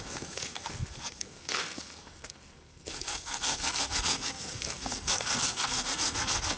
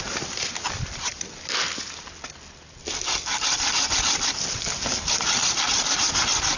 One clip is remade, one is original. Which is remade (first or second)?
first